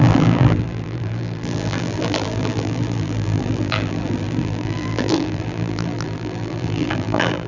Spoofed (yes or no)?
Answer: yes